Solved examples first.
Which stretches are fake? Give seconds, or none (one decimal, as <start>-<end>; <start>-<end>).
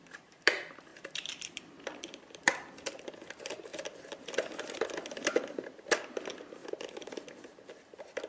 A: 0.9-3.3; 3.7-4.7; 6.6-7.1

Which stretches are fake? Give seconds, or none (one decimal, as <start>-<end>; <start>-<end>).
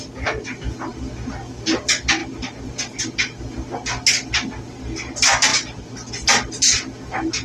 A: 5.5-6.1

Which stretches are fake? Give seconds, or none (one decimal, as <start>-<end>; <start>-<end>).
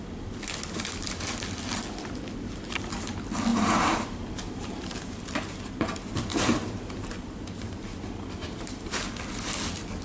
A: 3.5-5.6; 6.3-9.1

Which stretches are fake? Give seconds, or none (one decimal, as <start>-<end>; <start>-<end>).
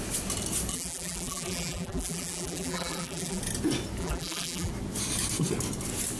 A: 0.7-3.4; 4.0-4.7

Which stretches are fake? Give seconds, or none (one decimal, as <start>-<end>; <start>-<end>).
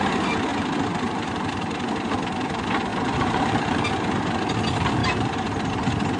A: 0.5-1.9; 2.9-3.9; 5.0-6.2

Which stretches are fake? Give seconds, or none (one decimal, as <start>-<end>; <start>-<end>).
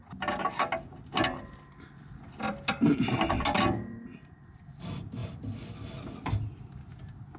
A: none